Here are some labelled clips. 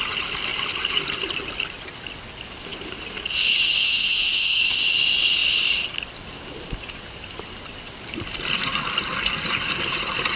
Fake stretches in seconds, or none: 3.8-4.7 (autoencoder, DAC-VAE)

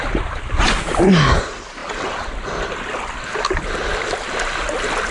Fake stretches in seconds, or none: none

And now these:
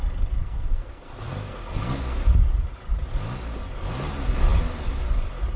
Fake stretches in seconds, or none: 0.4-2.2 (codec, SNAC)

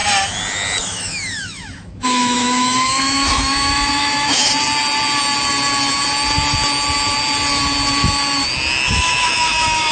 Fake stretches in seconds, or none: 0.8-4.5 (autoencoder, DAC-VAE); 8.9-9.9

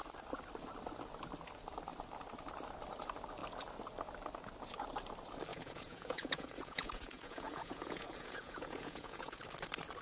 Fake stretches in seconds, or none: 5.5-9.4 (vocoder, Vocos)

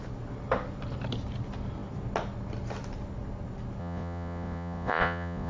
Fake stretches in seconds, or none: 3.8-5.5 (vocoder, Vocos)

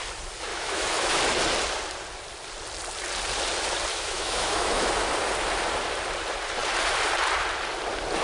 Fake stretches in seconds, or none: 0.5-1.2 (autoencoder, DAC-VAE); 3.9-4.9